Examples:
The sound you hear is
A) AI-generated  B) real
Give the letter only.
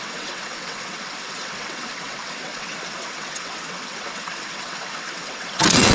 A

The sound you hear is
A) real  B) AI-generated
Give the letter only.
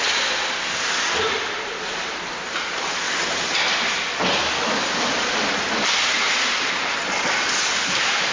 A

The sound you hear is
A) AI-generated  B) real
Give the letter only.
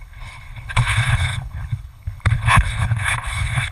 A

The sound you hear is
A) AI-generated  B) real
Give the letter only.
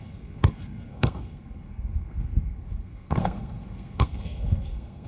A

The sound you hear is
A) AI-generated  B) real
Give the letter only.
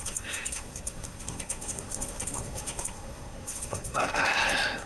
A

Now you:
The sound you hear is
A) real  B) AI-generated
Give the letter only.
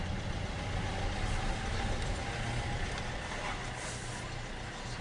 A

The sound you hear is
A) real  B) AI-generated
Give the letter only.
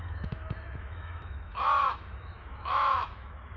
B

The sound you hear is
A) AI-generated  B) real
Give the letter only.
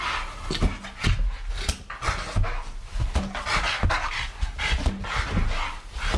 B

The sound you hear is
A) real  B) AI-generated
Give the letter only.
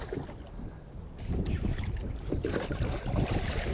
A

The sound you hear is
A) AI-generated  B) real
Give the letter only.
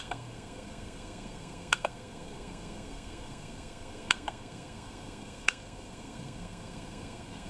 A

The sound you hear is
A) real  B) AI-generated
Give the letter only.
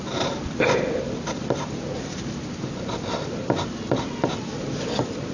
A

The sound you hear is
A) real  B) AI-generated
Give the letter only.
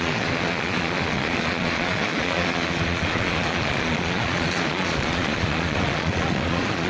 B